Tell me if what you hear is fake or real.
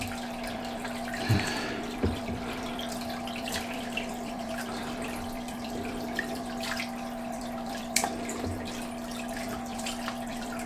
fake